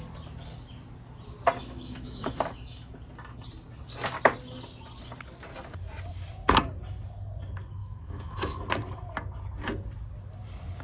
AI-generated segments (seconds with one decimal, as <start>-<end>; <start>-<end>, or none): 1.6-2.9; 7.8-8.6